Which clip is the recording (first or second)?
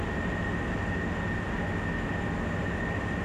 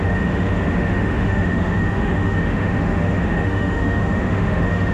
first